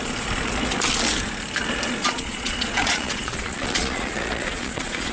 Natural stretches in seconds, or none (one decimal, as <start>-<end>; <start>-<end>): 0.0-2.0